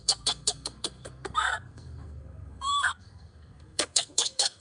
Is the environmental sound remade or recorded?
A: remade